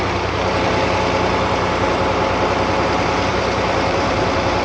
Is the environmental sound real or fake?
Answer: fake